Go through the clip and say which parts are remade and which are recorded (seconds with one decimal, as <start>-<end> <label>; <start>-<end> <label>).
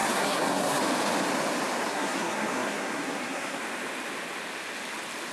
0.0-0.8 remade; 0.8-1.9 recorded; 1.9-3.6 remade; 3.6-5.3 recorded